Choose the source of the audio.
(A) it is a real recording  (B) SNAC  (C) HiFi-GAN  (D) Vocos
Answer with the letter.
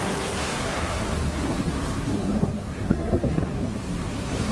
B